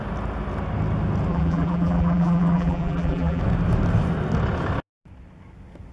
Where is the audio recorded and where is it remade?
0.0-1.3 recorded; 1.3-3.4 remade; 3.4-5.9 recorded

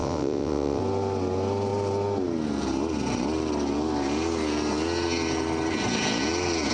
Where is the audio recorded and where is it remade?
0.0-0.8 remade; 0.8-6.7 recorded

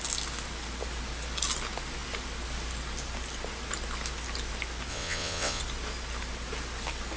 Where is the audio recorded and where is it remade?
0.0-4.9 recorded; 4.9-5.6 remade; 5.6-7.2 recorded